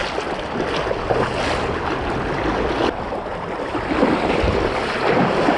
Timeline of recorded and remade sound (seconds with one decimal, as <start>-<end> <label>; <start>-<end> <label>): 0.0-3.3 recorded; 3.3-4.5 remade; 4.5-5.6 recorded